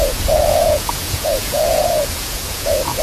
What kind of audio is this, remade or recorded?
remade